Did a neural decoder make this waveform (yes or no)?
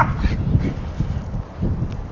no